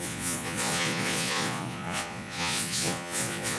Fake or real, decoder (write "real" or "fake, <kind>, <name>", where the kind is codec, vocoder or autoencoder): fake, vocoder, Vocos